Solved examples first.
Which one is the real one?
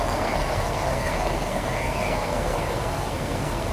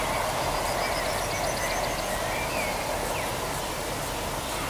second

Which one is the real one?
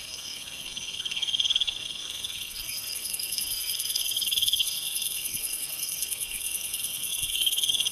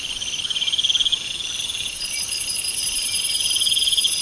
second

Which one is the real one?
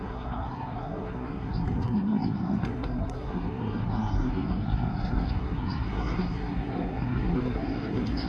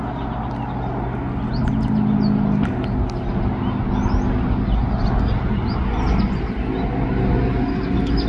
second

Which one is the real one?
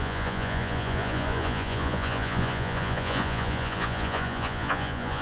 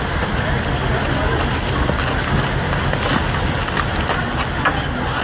second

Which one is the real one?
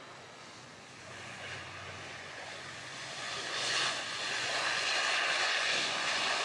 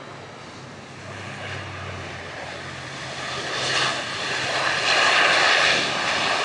second